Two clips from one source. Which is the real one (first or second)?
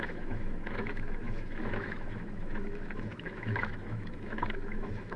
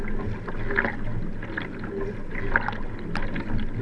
second